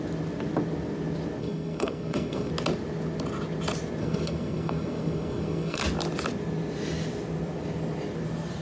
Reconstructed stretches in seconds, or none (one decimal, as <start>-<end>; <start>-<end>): 1.4-2.5; 4.0-5.8